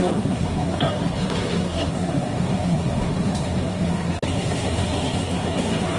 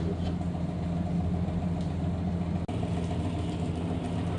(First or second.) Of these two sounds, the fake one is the first